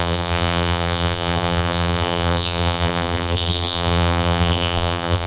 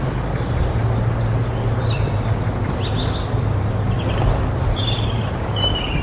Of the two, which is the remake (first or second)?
first